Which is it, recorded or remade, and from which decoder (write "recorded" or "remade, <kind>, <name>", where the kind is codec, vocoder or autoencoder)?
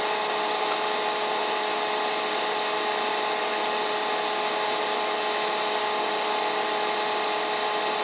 recorded